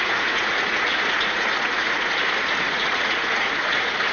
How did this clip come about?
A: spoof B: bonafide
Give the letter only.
A